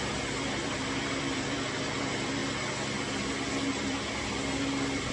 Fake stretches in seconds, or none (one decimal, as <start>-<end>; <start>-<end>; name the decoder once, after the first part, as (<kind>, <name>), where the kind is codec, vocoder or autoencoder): 0.0-2.4 (vocoder, BigVGAN v2); 3.8-5.1